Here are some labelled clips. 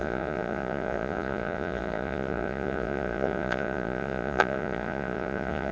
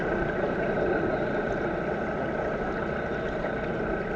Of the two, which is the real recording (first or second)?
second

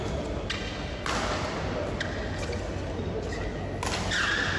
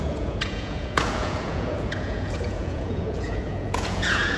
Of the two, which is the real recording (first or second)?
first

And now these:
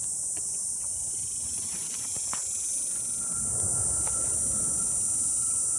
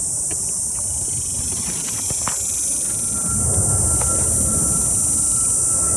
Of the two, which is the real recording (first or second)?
second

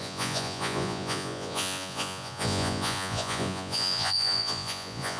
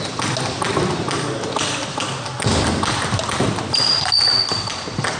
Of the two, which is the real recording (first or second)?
second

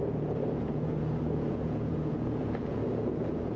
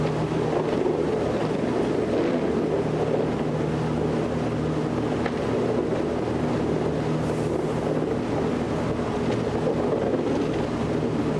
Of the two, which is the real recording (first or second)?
second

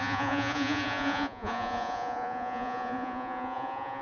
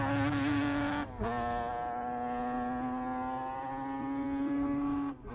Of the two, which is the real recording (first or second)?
second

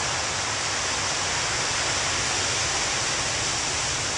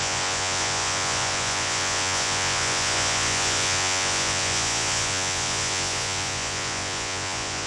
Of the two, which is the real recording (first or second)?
first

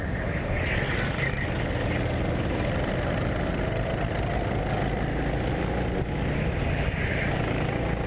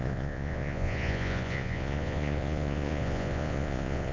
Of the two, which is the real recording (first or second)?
first